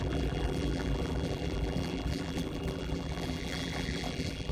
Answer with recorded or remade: remade